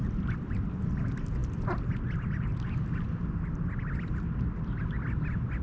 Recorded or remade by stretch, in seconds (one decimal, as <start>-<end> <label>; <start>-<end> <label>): 0.0-5.6 recorded